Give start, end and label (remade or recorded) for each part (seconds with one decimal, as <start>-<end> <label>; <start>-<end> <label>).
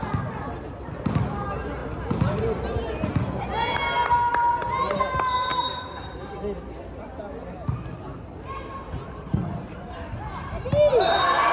0.0-11.5 recorded